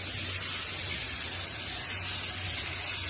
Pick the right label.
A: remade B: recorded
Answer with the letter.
B